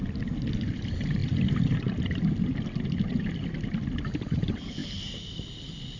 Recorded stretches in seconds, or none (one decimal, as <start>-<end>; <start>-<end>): 0.0-6.0

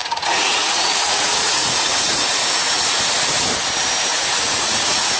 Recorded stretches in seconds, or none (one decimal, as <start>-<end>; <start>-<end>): 3.1-4.1

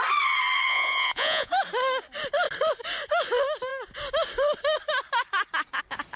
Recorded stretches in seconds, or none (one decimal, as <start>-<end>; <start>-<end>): 0.0-0.7; 1.5-6.2

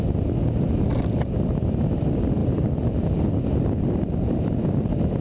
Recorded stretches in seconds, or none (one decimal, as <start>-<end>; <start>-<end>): 0.0-5.2

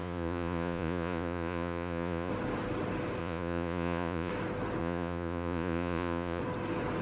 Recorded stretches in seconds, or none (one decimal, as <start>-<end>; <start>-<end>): 2.3-3.2; 4.3-4.8; 6.4-7.0

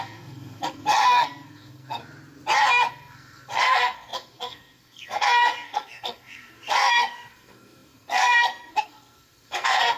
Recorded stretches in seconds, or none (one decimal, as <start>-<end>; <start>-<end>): 2.0-2.9

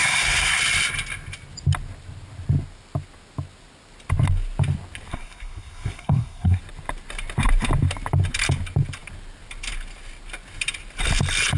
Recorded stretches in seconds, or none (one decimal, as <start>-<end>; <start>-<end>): 0.6-5.1; 6.6-11.6